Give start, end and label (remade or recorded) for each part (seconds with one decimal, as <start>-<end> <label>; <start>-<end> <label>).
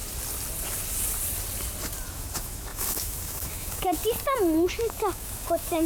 0.0-2.1 recorded; 2.1-4.0 remade; 4.0-4.7 recorded; 4.7-5.9 remade